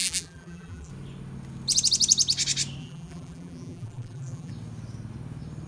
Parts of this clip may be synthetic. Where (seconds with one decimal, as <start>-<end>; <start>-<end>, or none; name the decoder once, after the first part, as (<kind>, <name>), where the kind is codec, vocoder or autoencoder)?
0.0-0.9 (vocoder, BigVGAN v2); 2.8-4.5

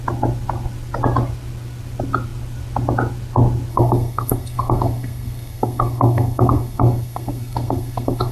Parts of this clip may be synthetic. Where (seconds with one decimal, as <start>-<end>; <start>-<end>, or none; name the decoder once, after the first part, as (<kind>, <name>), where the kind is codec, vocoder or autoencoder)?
3.7-8.3 (codec, SNAC)

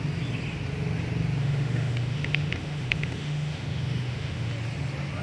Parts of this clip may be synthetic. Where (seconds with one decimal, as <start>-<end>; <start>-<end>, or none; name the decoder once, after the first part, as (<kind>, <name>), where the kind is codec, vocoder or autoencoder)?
1.4-4.5 (autoencoder, DAC-VAE)

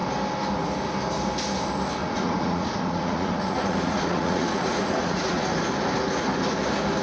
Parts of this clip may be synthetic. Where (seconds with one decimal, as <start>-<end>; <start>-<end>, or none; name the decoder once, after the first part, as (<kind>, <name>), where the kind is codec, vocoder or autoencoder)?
2.0-5.4 (vocoder, Vocos)

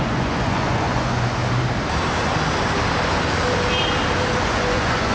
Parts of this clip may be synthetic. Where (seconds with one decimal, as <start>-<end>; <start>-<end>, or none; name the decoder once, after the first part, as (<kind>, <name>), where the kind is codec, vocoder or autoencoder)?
0.0-1.4 (vocoder, Vocos); 4.4-5.1